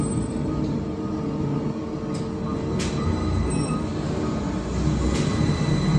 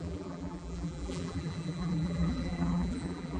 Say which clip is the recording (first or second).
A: first